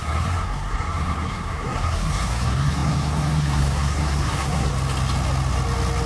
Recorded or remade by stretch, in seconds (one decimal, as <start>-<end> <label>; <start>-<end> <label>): 0.0-4.7 remade; 4.7-6.1 recorded